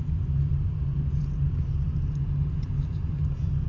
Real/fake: real